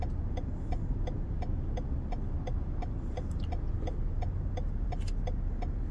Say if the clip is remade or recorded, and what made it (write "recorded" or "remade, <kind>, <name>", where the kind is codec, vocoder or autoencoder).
recorded